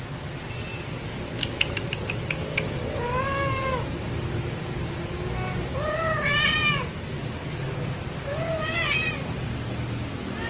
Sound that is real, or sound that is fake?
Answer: real